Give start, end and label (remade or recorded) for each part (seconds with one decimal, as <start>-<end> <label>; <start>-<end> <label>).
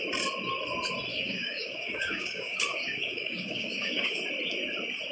0.0-1.1 recorded; 1.1-4.2 remade; 4.2-5.1 recorded